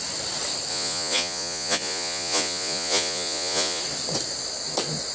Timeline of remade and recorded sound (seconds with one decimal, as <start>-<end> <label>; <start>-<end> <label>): 0.0-0.7 recorded; 0.7-3.8 remade; 3.8-5.1 recorded